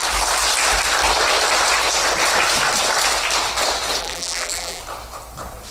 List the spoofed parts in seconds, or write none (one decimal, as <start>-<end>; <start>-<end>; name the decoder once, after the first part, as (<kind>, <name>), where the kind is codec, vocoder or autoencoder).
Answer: 4.0-4.8 (vocoder, BigVGAN v2)

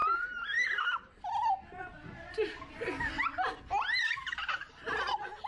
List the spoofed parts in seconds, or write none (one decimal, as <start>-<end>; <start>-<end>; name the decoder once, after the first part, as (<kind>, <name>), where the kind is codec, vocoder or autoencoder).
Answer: 0.0-1.3 (vocoder, BigVGAN v2)

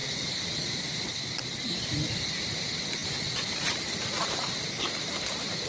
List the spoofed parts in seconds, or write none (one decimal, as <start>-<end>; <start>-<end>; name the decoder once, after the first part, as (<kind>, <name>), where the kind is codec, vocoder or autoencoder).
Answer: 0.0-2.6 (vocoder, BigVGAN v2)

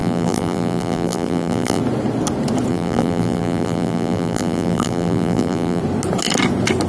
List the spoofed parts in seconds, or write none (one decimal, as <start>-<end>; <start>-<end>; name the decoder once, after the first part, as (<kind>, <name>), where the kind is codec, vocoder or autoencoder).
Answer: 0.0-1.8 (vocoder, BigVGAN v2); 2.7-5.8